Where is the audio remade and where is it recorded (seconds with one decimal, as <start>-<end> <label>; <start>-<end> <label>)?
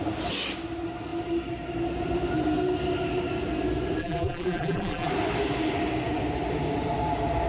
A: 0.0-4.0 recorded; 4.0-5.1 remade; 5.1-7.5 recorded